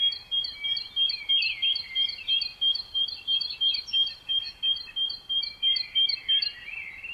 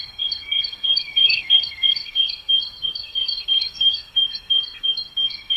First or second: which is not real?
second